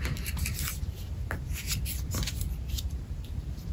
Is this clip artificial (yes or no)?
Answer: yes